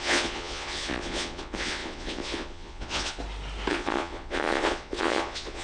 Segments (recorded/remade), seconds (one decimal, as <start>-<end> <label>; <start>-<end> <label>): 0.0-3.2 remade; 3.2-3.7 recorded; 3.7-5.6 remade